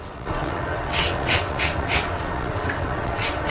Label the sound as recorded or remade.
remade